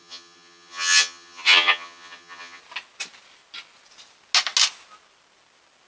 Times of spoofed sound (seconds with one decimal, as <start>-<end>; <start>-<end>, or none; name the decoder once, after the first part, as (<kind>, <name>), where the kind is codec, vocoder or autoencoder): 0.0-2.6 (vocoder, HiFi-GAN)